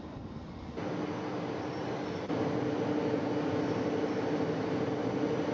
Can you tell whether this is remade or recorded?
recorded